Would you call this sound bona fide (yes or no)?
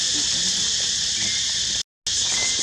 yes